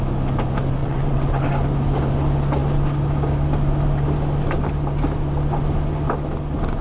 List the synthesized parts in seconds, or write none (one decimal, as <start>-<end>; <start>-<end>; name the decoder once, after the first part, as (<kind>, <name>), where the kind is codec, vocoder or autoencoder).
0.8-1.4 (vocoder, WaveNeXt)